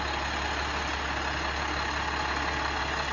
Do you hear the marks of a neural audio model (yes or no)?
no